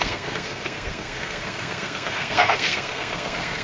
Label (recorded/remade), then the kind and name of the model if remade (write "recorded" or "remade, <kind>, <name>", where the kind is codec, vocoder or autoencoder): remade, codec, SNAC